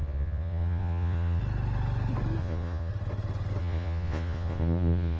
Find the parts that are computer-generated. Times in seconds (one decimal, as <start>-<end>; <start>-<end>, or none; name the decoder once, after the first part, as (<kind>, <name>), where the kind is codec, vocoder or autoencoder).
0.0-1.4 (vocoder, Vocos); 2.4-2.9; 3.6-5.2